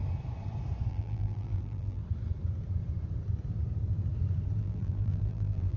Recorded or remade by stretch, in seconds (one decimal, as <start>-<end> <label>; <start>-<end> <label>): 0.0-0.9 recorded; 0.9-2.0 remade; 2.0-4.6 recorded; 4.6-5.8 remade